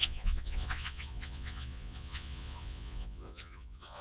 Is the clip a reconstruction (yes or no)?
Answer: yes